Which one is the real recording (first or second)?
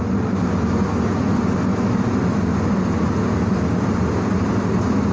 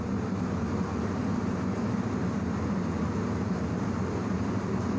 first